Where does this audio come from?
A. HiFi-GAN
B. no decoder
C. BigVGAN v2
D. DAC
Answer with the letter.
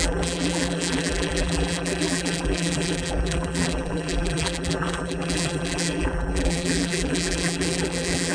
C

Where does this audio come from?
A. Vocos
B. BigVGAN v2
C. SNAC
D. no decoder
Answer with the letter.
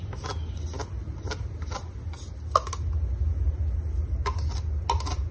D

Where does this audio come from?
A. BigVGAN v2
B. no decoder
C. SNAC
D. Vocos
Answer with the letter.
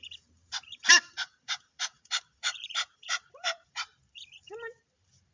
A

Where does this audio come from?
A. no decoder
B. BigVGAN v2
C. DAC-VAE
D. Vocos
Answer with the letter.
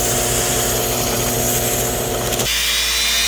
A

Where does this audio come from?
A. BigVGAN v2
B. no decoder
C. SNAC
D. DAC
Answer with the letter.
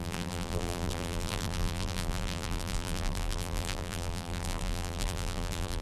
A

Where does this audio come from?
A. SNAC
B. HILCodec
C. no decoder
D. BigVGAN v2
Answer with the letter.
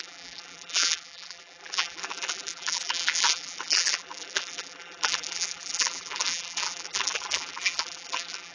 D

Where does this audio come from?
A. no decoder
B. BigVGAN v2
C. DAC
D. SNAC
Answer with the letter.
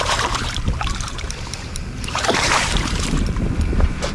B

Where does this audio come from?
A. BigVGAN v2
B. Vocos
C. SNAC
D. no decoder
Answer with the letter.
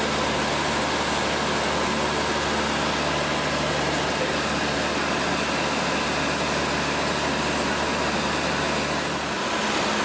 D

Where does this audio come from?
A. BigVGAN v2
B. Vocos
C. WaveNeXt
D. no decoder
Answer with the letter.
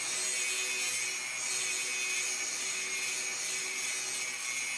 D